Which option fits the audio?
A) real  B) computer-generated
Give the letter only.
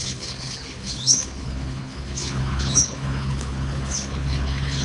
B